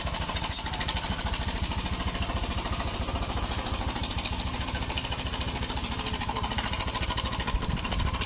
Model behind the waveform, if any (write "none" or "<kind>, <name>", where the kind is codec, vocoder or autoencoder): none